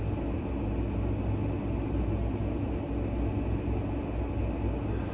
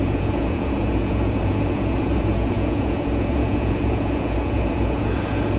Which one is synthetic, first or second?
second